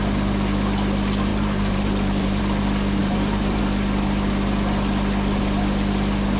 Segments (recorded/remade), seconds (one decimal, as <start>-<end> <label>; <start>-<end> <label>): 0.0-1.3 recorded; 1.3-2.4 remade; 2.4-3.0 recorded; 3.0-3.6 remade; 3.6-6.4 recorded